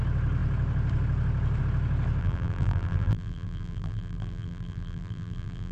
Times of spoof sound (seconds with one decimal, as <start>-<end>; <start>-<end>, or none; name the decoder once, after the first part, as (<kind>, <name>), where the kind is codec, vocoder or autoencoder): 2.2-5.7 (vocoder, BigVGAN v2)